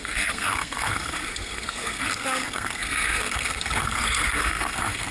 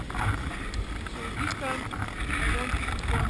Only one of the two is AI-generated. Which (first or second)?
first